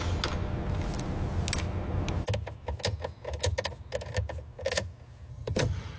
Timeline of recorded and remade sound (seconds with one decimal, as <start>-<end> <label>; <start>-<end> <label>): 0.0-5.3 recorded; 5.3-6.0 remade